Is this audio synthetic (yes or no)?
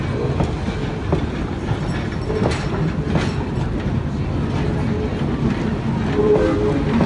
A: no